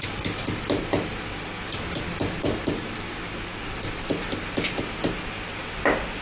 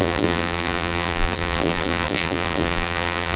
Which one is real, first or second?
first